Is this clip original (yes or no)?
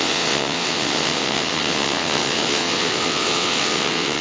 no